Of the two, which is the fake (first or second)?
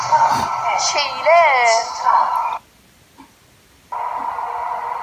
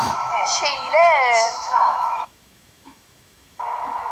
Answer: second